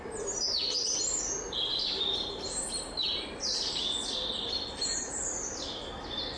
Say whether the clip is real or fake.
real